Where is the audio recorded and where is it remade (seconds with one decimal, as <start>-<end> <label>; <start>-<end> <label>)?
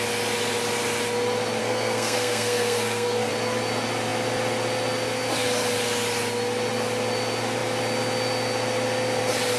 0.0-1.6 recorded; 1.6-3.3 remade; 3.3-9.6 recorded